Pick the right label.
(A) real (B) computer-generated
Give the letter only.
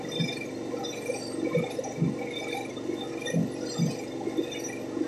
A